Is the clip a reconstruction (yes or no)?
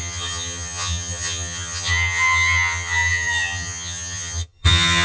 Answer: yes